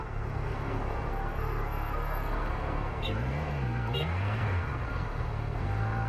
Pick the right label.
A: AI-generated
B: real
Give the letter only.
A